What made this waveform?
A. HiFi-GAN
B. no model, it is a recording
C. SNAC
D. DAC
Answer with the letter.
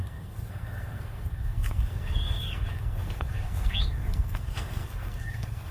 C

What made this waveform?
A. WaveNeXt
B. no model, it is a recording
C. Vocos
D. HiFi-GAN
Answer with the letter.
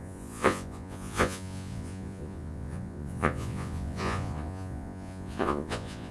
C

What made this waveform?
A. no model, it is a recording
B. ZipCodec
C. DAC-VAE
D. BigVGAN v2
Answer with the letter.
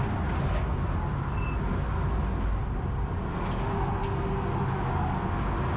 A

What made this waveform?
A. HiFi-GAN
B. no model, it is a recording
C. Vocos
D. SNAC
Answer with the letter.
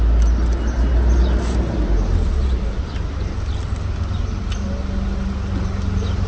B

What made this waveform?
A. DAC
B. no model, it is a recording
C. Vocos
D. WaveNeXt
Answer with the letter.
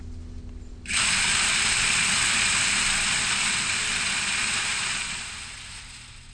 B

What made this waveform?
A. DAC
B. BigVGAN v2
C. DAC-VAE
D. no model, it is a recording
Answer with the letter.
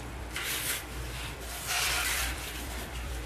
B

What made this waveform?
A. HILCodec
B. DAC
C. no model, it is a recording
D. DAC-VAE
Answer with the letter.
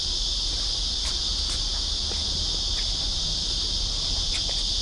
C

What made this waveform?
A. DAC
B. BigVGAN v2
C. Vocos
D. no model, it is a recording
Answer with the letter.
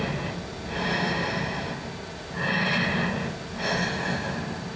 D